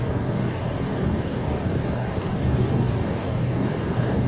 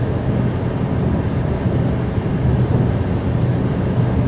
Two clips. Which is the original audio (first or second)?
second